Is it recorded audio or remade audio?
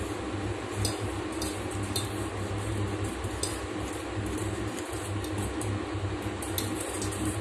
recorded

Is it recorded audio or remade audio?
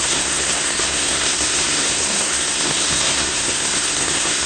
remade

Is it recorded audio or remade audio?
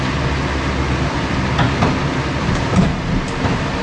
recorded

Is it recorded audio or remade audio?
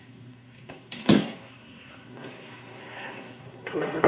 remade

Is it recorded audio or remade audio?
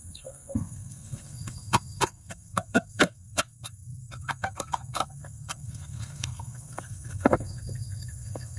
remade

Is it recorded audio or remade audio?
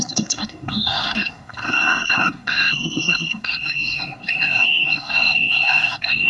remade